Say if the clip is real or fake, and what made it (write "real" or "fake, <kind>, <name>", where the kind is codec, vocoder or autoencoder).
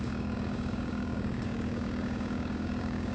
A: fake, codec, DAC